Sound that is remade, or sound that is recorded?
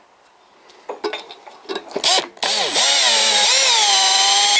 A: recorded